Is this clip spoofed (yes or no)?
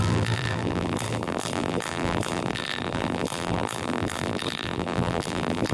yes